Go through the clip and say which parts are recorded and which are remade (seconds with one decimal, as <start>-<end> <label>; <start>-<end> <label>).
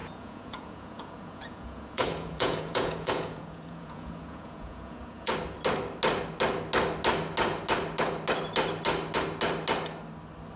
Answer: 0.0-5.3 remade; 5.3-10.6 recorded